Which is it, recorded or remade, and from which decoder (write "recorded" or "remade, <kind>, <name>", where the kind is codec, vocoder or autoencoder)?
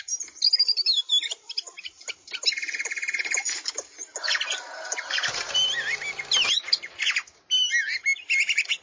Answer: recorded